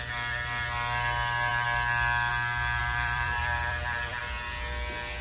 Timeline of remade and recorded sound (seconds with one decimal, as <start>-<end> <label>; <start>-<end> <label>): 0.0-2.8 recorded; 2.8-4.2 remade; 4.2-5.2 recorded

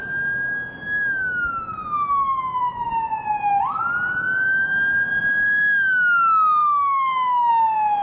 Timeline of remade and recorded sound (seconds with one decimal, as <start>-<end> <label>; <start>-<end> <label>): 0.0-8.0 recorded